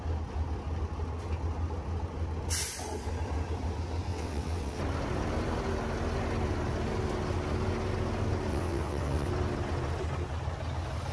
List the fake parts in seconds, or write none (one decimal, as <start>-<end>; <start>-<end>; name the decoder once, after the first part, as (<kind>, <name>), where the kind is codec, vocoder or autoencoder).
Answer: 4.1-4.8 (vocoder, WaveNeXt); 8.5-9.3